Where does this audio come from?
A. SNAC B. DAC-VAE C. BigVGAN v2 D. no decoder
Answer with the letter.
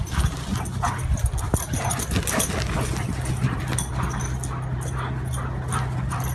D